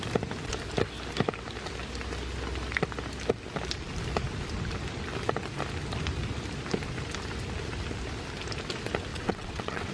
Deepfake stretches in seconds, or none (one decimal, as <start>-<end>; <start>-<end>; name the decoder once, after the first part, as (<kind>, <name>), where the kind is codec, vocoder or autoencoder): 9.1-9.9 (vocoder, WaveNeXt)